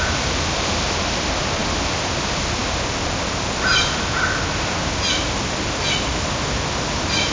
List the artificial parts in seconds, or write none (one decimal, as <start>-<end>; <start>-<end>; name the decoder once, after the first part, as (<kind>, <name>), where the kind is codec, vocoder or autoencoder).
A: 1.6-2.1 (vocoder, BigVGAN v2)